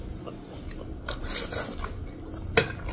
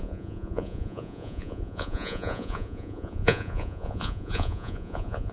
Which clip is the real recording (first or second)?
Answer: first